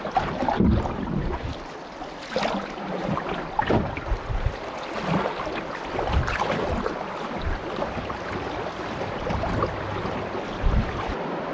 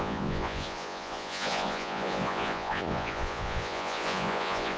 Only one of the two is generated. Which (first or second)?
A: second